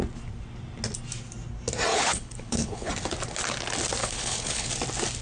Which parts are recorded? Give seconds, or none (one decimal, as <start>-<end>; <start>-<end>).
0.0-1.9; 2.9-4.0; 4.7-5.2